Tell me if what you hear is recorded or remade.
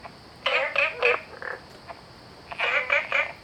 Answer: recorded